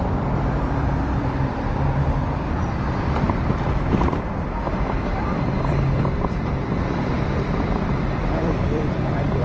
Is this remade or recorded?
remade